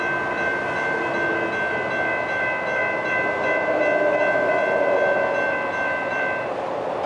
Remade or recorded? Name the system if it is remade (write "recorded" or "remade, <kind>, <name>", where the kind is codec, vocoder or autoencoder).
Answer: recorded